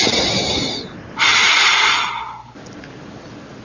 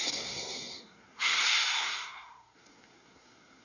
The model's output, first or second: second